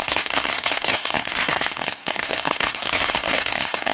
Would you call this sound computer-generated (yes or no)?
yes